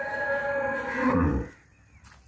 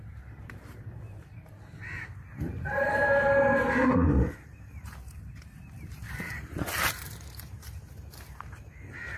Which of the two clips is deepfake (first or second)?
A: second